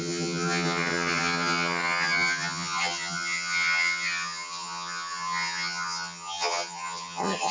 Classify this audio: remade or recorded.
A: remade